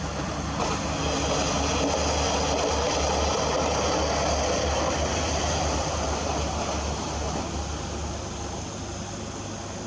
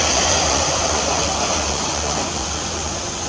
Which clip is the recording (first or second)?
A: first